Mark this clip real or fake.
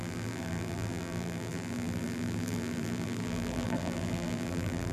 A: fake